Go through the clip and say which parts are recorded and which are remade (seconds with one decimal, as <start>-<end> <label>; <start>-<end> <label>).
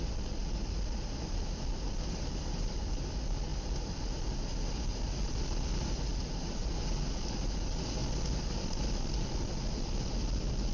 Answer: 0.0-6.1 recorded; 6.1-6.8 remade; 6.8-10.7 recorded